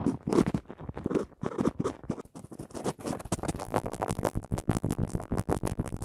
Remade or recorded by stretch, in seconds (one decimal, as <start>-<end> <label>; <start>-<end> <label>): 0.0-3.6 recorded; 3.6-6.0 remade